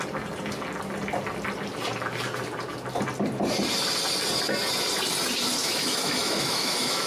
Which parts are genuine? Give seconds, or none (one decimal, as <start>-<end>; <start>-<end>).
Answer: 0.0-5.6